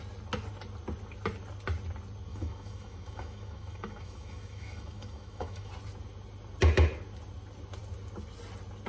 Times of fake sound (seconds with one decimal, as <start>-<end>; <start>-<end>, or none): 2.3-5.7